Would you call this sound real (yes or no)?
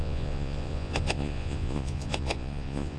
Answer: no